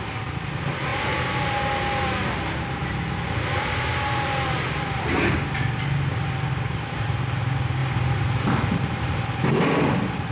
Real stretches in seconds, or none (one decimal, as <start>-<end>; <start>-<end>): 0.0-10.3